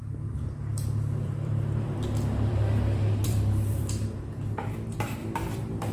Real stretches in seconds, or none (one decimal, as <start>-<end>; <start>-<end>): 0.0-0.7; 4.2-5.2